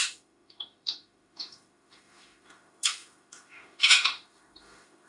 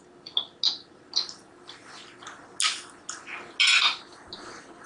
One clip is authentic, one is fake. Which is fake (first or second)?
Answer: first